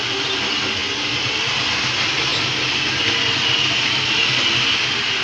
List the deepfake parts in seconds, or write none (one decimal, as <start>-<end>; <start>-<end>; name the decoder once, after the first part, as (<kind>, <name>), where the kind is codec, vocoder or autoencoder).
none